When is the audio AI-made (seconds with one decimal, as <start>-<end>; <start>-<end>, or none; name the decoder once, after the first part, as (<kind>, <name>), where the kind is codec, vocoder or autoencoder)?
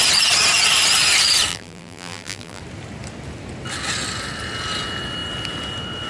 1.5-2.6 (vocoder, BigVGAN v2)